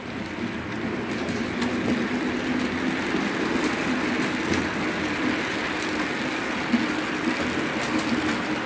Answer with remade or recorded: recorded